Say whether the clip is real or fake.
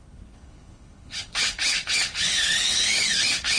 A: fake